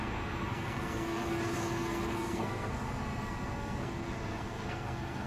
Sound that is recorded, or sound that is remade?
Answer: remade